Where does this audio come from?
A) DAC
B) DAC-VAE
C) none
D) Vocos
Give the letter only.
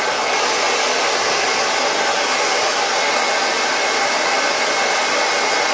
C